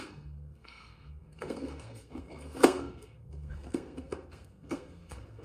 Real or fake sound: fake